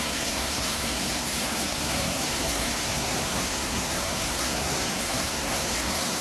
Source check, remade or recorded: remade